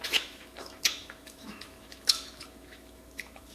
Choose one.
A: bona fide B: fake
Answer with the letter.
B